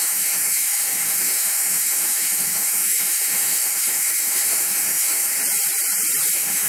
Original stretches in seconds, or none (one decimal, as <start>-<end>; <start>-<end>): 5.4-6.3